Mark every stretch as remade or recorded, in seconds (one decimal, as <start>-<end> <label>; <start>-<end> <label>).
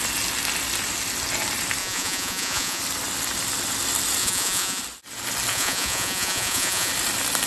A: 0.0-1.8 recorded; 1.8-2.8 remade; 2.8-4.2 recorded; 4.2-4.8 remade; 4.8-5.5 recorded; 5.5-6.9 remade; 6.9-7.5 recorded